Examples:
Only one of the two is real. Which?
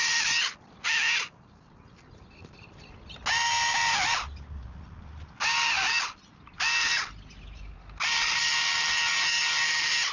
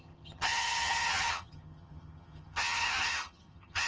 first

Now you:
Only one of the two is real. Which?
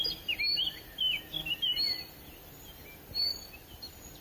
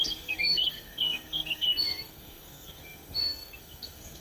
first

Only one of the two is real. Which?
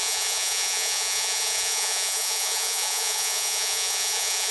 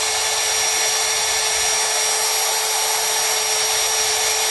second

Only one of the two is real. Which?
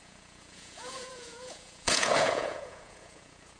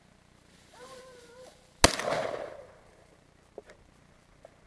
second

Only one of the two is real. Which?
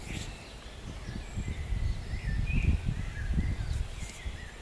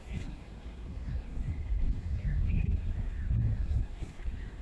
first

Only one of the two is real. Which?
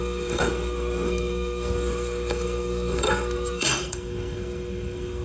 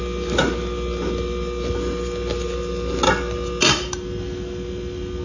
second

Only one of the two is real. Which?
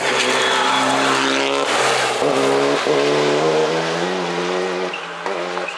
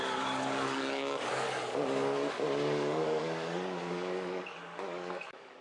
first